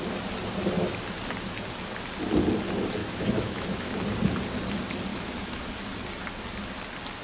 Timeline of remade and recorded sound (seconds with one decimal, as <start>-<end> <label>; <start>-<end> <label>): 0.0-3.0 recorded; 3.0-3.9 remade; 3.9-5.1 recorded; 5.1-5.6 remade; 5.6-7.2 recorded